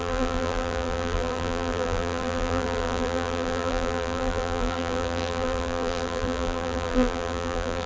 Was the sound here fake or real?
fake